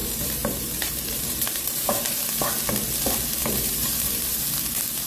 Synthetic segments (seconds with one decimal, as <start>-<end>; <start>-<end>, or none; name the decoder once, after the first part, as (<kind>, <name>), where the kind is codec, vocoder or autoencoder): 0.0-2.2 (vocoder, BigVGAN v2); 3.4-4.4